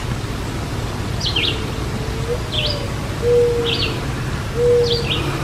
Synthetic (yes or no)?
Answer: no